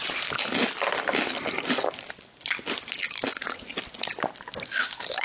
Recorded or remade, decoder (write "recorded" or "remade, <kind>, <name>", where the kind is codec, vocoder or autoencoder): recorded